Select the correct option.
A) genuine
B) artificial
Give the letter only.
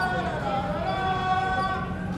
A